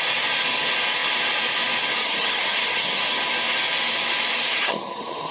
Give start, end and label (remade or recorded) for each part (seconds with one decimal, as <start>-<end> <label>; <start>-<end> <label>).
0.0-2.0 recorded; 2.0-3.0 remade; 3.0-4.5 recorded; 4.5-5.3 remade